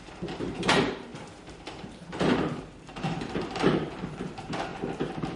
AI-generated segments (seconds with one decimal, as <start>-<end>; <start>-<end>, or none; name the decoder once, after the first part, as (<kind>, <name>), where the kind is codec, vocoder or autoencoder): 0.0-4.7 (vocoder, BigVGAN v2)